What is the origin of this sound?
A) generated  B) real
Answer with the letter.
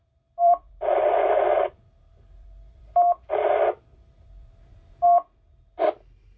A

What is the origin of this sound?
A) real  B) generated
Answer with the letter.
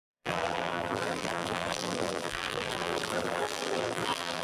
B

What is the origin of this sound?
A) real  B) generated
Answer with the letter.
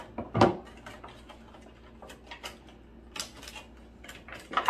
A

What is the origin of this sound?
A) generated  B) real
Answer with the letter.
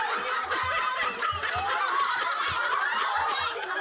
A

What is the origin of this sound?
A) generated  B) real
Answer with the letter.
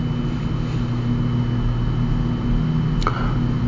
B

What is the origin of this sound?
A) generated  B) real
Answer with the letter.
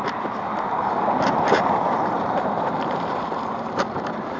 A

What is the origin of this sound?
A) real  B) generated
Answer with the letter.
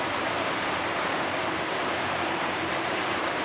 B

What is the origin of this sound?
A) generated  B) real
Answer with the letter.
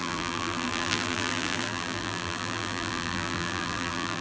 A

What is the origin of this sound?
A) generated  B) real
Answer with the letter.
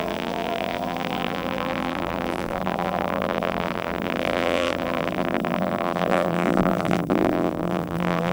A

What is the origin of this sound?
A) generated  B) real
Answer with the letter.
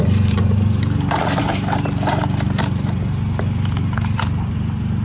A